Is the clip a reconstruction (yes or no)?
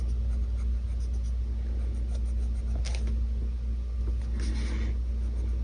no